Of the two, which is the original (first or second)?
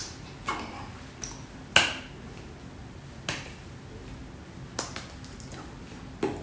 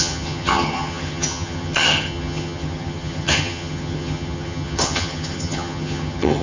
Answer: first